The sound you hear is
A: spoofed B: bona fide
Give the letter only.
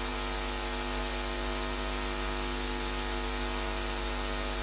B